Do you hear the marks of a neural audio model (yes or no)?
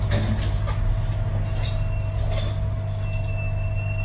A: no